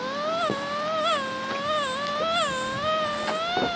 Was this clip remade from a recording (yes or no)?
no